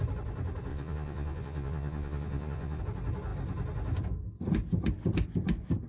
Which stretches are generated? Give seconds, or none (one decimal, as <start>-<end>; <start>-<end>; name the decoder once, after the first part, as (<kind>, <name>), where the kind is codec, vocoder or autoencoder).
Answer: 0.7-2.8 (vocoder, Vocos)